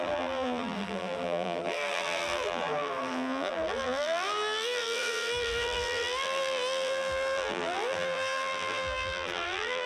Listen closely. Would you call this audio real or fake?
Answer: fake